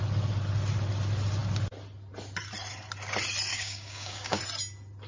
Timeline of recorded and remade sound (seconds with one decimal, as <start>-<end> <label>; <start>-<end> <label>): 0.0-3.5 recorded; 3.5-4.4 remade; 4.4-5.1 recorded